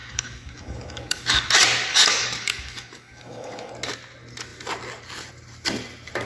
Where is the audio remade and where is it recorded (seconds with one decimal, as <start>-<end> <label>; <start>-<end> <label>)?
0.0-1.5 remade; 1.5-1.9 recorded; 1.9-3.7 remade; 3.7-6.2 recorded